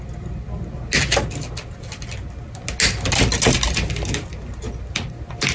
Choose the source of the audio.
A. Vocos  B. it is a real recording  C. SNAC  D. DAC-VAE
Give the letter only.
B